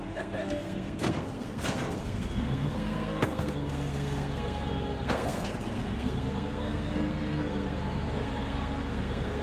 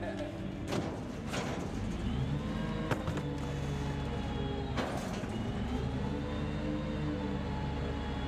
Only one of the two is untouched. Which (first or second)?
second